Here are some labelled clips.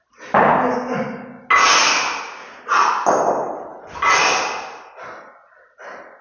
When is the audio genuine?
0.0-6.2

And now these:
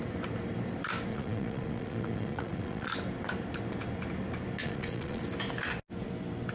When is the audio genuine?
0.0-1.1; 2.9-4.6; 5.2-6.5